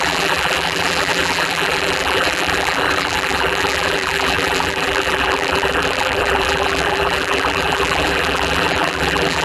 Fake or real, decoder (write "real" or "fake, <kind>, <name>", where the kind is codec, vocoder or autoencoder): fake, vocoder, BigVGAN v2